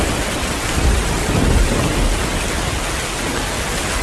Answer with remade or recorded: recorded